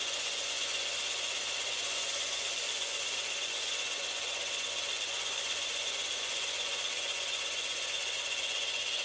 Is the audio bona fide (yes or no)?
no